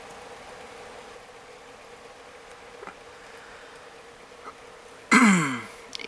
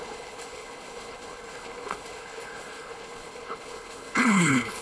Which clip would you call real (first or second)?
first